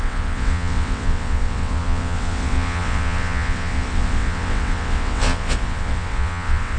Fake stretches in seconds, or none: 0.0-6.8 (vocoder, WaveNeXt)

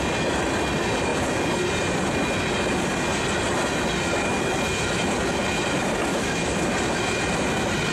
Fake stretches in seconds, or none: 6.1-6.6 (autoencoder, DAC-VAE)

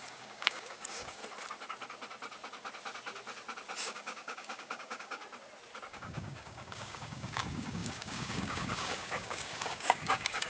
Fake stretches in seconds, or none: 0.0-1.2 (codec, DAC); 3.8-5.2; 5.9-10.5

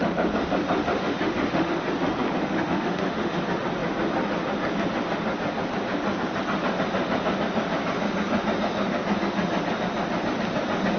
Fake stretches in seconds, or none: 0.8-1.7 (autoencoder, DAC-VAE); 2.4-3.4